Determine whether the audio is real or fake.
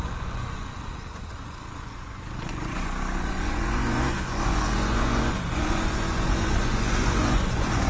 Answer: fake